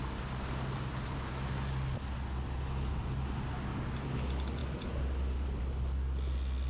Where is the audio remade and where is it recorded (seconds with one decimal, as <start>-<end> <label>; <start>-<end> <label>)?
0.0-6.7 recorded